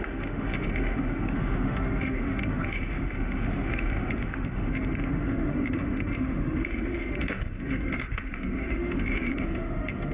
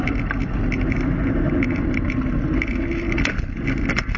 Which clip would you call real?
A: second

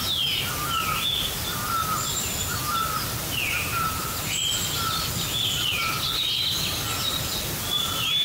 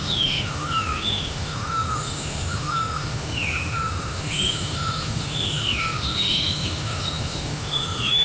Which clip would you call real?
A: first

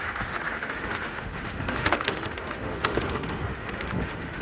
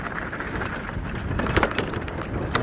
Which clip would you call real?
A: second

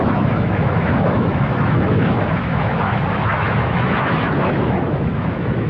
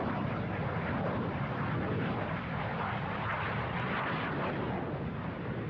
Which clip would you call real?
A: second